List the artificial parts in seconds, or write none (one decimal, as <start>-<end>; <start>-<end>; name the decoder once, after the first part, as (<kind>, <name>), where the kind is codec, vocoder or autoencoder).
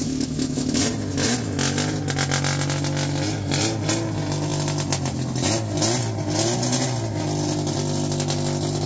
0.0-0.8 (autoencoder, DAC-VAE)